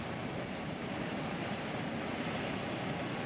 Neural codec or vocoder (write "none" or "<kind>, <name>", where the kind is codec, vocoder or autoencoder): vocoder, BigVGAN v2